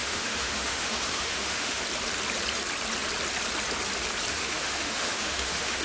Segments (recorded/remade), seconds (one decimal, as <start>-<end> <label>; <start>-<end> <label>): 0.0-1.8 remade; 1.8-4.3 recorded; 4.3-5.8 remade